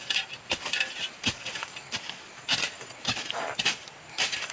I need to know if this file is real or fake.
real